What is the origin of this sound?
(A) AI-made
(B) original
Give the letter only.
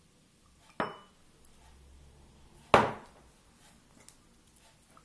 B